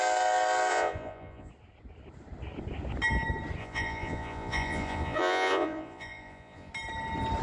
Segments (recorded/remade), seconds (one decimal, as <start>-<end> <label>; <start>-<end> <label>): 0.0-0.7 recorded; 0.7-1.5 remade; 1.5-3.6 recorded; 3.6-6.7 remade; 6.7-7.4 recorded